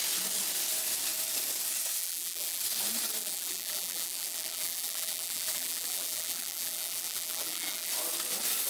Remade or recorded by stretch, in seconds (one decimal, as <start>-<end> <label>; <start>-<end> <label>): 0.0-2.0 recorded; 2.0-2.6 remade; 2.6-3.2 recorded; 3.2-7.9 remade; 7.9-8.7 recorded

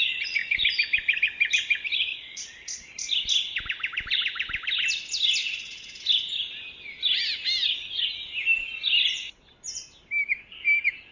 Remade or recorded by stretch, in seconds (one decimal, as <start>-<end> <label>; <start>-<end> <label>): 0.0-2.1 recorded; 2.1-2.9 remade; 2.9-5.4 recorded; 5.4-6.0 remade; 6.0-11.1 recorded

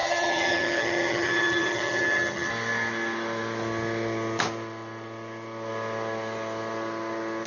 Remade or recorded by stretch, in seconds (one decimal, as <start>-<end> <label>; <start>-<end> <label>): 0.0-2.5 remade; 2.5-7.5 recorded

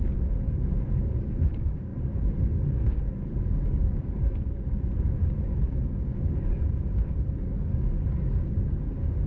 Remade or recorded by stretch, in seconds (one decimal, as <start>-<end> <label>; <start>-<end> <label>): 0.0-1.9 remade; 1.9-2.5 recorded; 2.5-9.3 remade

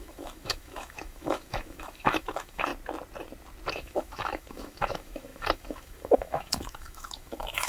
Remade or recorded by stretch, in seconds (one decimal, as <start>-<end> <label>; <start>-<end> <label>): 0.0-2.7 remade; 2.7-3.7 recorded; 3.7-7.7 remade

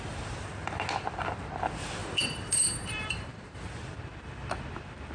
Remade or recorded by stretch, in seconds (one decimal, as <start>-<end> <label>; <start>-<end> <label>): 0.0-2.0 recorded; 2.0-3.7 remade; 3.7-5.1 recorded

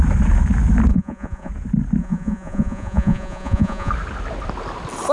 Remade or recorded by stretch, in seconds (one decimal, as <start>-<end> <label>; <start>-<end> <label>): 0.0-0.9 recorded; 0.9-1.5 remade; 1.5-2.0 recorded; 2.0-3.9 remade; 3.9-5.1 recorded